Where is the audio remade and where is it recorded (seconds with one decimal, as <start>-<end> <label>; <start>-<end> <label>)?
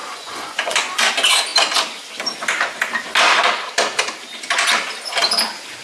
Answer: 0.0-1.1 remade; 1.1-5.8 recorded